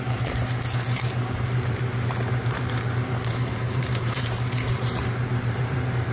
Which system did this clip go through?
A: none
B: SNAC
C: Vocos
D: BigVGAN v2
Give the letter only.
D